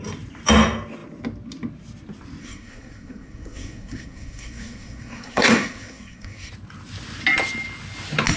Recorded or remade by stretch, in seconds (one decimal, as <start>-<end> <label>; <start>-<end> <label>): 0.0-2.4 recorded; 2.4-6.5 remade; 6.5-8.4 recorded